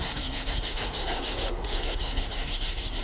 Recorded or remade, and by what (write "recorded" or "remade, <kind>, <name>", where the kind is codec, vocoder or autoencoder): remade, codec, SNAC